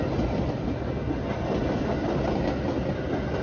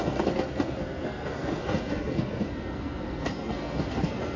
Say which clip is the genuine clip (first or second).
first